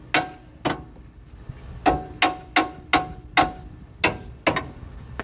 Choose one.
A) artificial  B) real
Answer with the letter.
B